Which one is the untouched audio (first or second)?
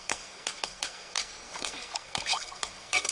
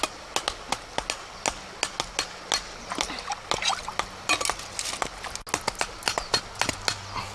second